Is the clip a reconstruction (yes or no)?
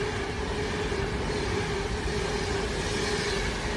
no